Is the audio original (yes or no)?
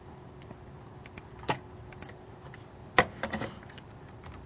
yes